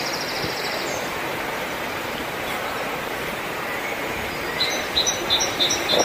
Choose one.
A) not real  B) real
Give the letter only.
A